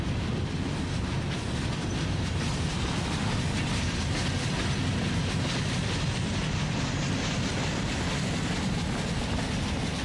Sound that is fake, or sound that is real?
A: real